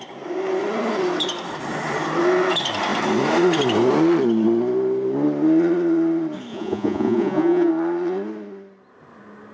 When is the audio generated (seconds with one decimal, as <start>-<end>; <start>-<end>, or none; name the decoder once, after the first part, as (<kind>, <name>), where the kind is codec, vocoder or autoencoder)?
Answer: 6.5-7.7 (vocoder, Vocos)

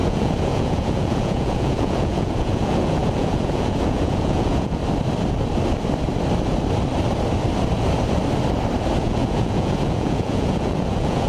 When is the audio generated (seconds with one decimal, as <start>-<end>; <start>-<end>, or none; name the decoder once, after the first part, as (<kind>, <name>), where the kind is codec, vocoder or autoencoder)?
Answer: 0.0-4.8 (vocoder, Vocos); 9.0-11.3

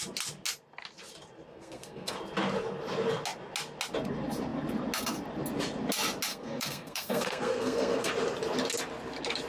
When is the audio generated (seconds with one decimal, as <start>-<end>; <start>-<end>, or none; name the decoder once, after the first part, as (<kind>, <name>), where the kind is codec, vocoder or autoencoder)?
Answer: 1.5-2.2 (codec, SNAC); 6.3-8.1

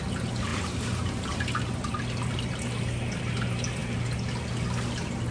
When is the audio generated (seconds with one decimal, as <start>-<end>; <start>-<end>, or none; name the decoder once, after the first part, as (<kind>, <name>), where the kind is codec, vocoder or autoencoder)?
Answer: none

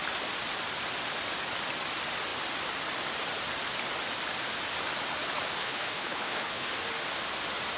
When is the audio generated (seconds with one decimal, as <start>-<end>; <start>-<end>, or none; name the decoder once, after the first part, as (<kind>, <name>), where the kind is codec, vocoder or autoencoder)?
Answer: 5.6-6.7 (codec, HILCodec)

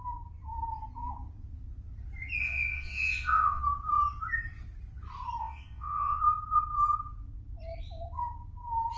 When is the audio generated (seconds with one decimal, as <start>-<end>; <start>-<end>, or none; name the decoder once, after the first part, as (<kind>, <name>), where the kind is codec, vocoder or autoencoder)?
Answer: 2.4-3.6 (vocoder, WaveNeXt); 5.4-6.2

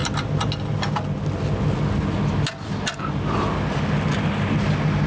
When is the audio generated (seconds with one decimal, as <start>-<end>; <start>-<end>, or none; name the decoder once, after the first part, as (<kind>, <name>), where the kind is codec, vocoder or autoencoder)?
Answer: none

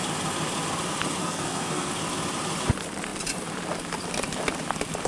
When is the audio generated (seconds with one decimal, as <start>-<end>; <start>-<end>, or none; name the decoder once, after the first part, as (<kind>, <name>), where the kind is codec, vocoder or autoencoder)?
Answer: 1.2-1.9 (codec, SNAC)